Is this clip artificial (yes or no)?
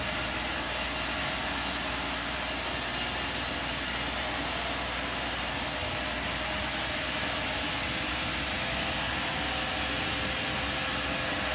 no